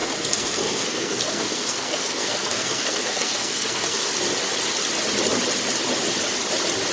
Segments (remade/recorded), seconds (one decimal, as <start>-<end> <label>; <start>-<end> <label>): 0.0-4.1 remade; 4.1-6.9 recorded